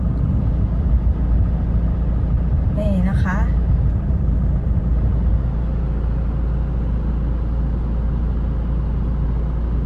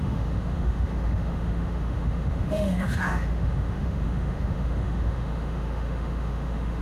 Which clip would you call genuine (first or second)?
first